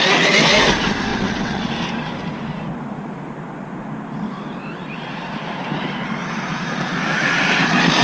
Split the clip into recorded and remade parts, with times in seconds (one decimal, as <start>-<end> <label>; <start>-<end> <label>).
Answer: 0.0-1.1 recorded; 1.1-1.7 remade; 1.7-8.0 recorded